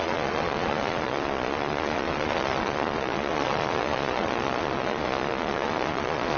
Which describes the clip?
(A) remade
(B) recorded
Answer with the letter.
A